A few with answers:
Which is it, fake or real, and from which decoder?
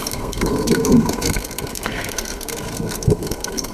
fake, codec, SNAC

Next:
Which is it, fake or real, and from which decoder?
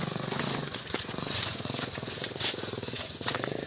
fake, vocoder, Vocos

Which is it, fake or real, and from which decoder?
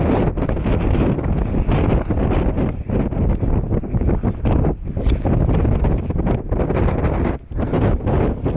real